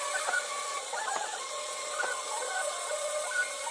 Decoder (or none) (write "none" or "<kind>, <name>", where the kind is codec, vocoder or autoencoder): vocoder, Vocos